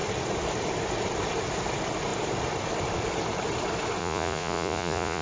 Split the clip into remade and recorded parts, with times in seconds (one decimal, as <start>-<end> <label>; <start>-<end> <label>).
0.0-4.0 recorded; 4.0-5.2 remade